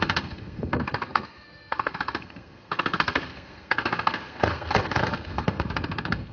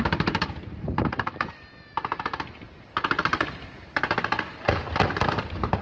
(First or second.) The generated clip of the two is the first